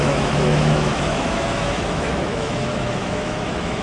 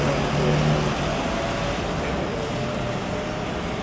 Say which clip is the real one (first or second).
second